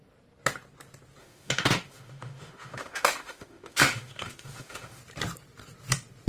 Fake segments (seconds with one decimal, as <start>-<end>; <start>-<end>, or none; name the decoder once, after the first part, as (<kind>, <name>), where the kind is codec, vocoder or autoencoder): 1.2-5.0 (autoencoder, DAC-VAE)